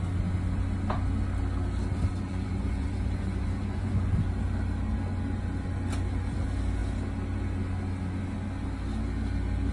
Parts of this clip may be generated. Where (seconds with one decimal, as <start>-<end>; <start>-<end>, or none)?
2.3-4.1